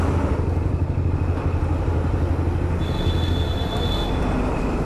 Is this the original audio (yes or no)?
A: yes